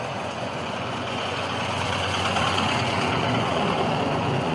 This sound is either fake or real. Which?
fake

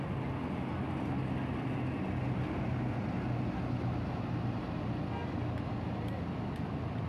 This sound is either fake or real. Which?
real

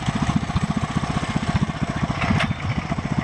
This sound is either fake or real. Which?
real